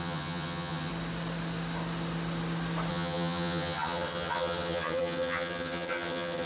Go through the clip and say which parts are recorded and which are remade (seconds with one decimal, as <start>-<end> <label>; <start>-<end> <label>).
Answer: 0.0-0.9 remade; 0.9-2.9 recorded; 2.9-6.5 remade